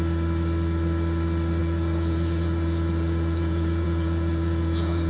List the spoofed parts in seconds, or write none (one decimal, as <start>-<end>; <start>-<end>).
1.6-5.1